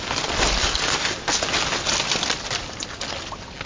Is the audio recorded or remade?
recorded